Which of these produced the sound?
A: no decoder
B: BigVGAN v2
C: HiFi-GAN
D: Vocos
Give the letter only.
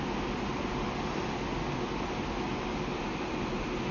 A